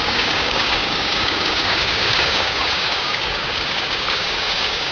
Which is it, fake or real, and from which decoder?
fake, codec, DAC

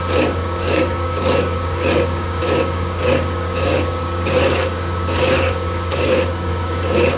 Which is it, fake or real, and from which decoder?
fake, codec, DAC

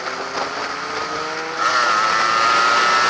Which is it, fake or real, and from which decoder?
real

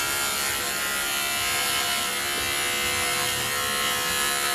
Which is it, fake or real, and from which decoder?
real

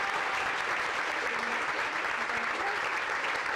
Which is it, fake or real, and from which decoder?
real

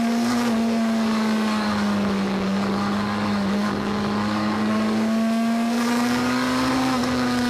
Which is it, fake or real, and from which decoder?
fake, codec, DAC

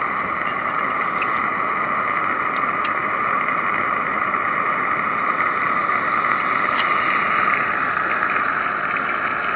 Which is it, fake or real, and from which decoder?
real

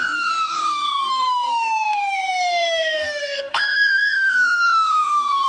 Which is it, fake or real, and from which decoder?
fake, codec, DAC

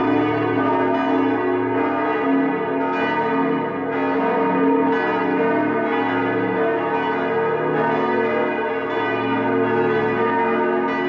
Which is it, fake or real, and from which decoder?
real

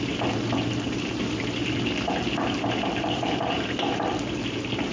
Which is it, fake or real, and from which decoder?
real